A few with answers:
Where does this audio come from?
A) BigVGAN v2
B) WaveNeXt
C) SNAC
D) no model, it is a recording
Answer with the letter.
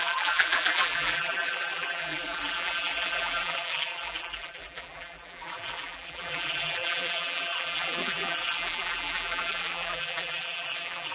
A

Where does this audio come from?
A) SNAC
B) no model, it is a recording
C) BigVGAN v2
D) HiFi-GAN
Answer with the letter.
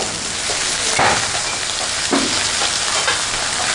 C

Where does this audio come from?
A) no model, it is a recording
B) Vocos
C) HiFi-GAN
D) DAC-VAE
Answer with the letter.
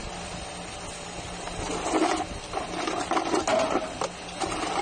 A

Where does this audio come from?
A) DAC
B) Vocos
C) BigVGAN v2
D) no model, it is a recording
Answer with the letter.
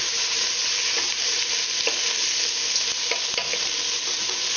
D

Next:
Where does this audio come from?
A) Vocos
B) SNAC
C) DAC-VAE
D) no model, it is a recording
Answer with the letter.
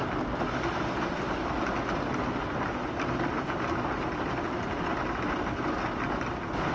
D